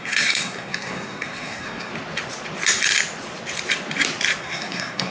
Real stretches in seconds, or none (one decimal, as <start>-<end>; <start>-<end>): 1.9-4.4